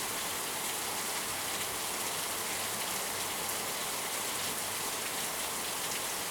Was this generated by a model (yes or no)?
no